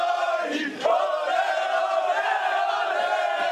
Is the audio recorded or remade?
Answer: remade